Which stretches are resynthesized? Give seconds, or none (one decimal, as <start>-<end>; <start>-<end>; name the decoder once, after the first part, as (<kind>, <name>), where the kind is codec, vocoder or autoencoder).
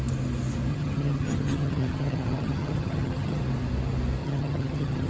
0.7-3.4 (vocoder, HiFi-GAN); 4.2-5.1